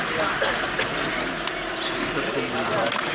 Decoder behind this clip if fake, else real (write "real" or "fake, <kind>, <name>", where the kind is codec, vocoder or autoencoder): real